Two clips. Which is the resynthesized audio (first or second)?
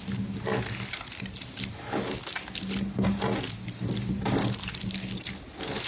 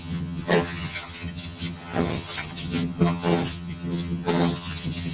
second